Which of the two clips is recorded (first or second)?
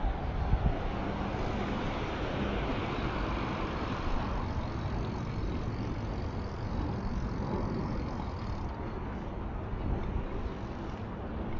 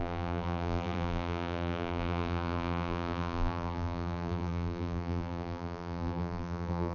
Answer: first